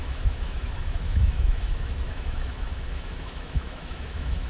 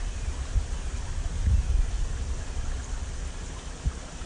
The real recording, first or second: second